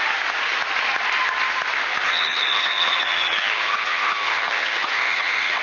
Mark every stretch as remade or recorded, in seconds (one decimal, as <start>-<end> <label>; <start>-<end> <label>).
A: 0.0-1.9 recorded; 1.9-5.6 remade

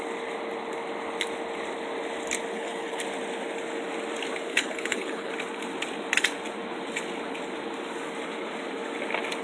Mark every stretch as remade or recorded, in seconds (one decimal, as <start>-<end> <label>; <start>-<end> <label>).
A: 0.0-2.5 recorded; 2.5-3.0 remade; 3.0-4.5 recorded; 4.5-5.3 remade; 5.3-9.4 recorded

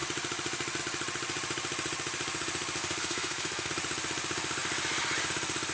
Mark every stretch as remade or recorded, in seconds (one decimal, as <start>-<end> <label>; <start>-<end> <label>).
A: 0.0-2.8 recorded; 2.8-3.7 remade; 3.7-5.7 recorded